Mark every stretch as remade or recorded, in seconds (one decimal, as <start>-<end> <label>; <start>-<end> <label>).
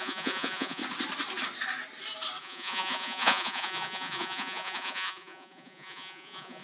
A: 0.0-0.8 remade; 0.8-2.4 recorded; 2.4-6.6 remade